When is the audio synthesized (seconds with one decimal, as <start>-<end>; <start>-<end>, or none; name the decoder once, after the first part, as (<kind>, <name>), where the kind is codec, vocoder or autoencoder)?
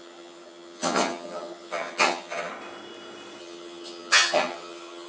0.0-2.5 (vocoder, HiFi-GAN); 3.4-5.1